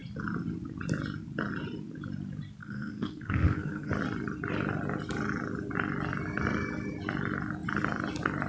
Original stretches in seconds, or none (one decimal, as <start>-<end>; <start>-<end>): 0.0-2.6; 3.9-8.5